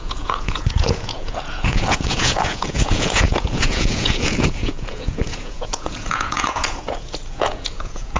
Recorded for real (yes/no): no